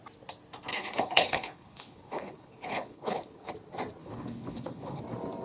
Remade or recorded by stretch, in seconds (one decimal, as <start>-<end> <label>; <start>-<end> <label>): 0.0-0.7 recorded; 0.7-3.5 remade; 3.5-4.0 recorded; 4.0-5.0 remade; 5.0-5.4 recorded